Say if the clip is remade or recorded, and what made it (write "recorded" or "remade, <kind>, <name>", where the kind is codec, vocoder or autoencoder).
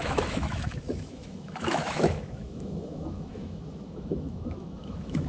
remade, autoencoder, DAC-VAE